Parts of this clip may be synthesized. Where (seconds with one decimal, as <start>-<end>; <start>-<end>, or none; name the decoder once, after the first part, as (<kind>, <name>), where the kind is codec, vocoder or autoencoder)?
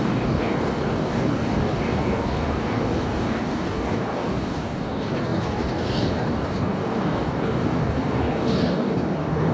0.0-9.5 (codec, DAC)